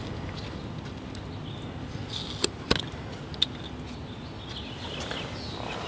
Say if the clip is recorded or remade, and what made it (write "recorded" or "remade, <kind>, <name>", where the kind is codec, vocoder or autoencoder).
recorded